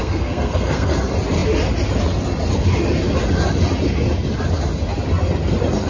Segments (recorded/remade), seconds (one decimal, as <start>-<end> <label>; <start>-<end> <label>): 0.0-0.9 remade; 0.9-5.9 recorded